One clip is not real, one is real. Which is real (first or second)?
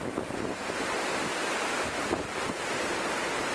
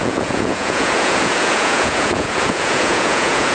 first